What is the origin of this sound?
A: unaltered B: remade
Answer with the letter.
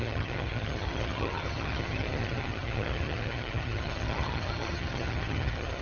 B